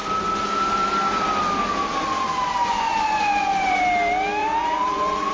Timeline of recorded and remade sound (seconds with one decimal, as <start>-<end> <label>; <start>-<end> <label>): 0.0-2.6 recorded; 2.6-3.8 remade; 3.8-4.4 recorded; 4.4-5.3 remade